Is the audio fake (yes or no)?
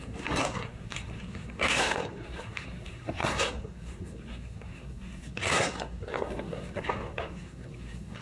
yes